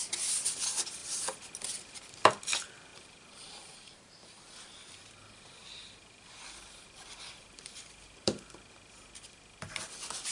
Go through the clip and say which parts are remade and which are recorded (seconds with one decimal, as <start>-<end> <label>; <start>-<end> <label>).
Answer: 0.0-2.9 recorded; 2.9-4.4 remade; 4.4-5.6 recorded; 5.6-8.6 remade; 8.6-10.3 recorded